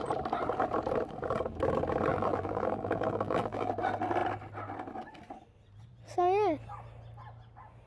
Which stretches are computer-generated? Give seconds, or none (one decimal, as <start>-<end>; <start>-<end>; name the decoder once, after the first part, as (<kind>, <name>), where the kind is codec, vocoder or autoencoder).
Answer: 2.1-3.7 (vocoder, BigVGAN v2)